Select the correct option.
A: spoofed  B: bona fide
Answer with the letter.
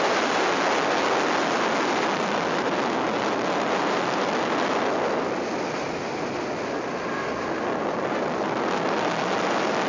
B